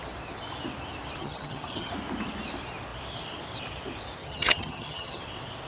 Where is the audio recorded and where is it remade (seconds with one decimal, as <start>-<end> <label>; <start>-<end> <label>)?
0.0-1.2 recorded; 1.2-1.9 remade; 1.9-4.2 recorded; 4.2-5.2 remade; 5.2-5.7 recorded